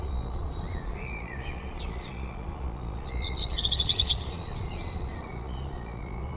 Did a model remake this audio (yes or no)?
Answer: yes